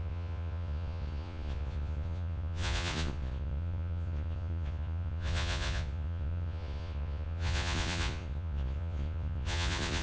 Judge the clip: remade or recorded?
remade